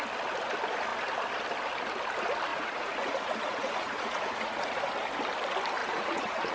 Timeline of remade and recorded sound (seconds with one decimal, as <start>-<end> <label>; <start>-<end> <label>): 0.0-2.5 recorded; 2.5-4.8 remade; 4.8-5.8 recorded; 5.8-6.5 remade